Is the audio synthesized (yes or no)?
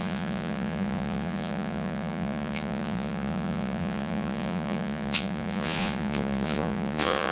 yes